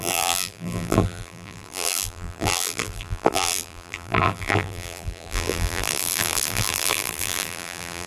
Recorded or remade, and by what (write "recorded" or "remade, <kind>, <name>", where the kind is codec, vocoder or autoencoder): remade, vocoder, BigVGAN v2